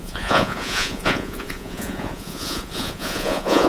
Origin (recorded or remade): remade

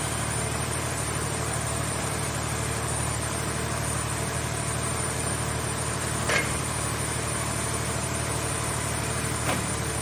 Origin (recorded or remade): remade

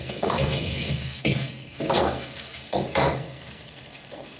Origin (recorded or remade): remade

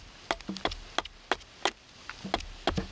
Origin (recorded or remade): recorded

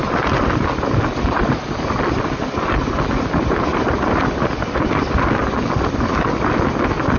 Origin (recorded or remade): recorded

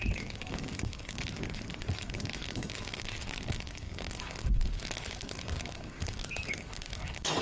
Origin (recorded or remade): remade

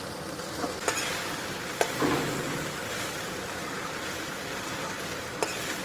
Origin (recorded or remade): recorded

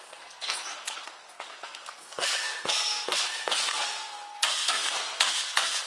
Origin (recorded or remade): remade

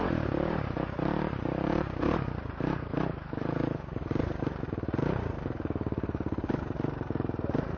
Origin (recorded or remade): remade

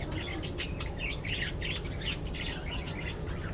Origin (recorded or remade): recorded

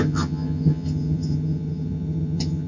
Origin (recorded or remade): remade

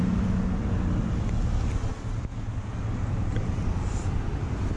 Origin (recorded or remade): recorded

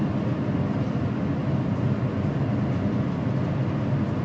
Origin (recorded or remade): recorded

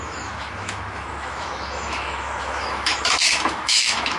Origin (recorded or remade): remade